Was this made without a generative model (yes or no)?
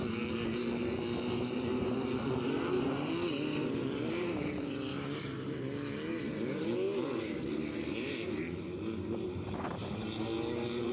yes